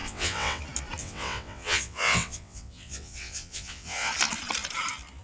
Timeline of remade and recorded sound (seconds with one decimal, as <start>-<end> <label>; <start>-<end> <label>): 0.0-0.6 remade; 0.6-1.0 recorded; 1.0-4.1 remade; 4.1-5.2 recorded